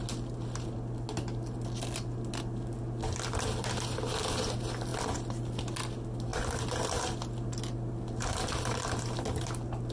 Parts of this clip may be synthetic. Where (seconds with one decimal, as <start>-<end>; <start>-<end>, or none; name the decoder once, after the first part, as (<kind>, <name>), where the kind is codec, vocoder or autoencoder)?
none